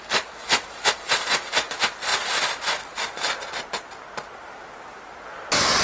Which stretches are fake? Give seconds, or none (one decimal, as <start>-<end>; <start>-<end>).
none